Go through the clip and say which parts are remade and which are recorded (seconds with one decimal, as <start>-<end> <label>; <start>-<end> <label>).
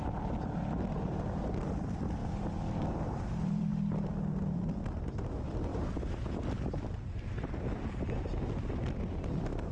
0.0-2.2 remade; 2.2-2.8 recorded; 2.8-5.7 remade; 5.7-9.7 recorded